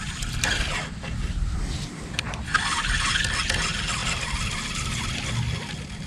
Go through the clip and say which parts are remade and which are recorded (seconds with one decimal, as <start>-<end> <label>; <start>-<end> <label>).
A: 0.0-6.1 recorded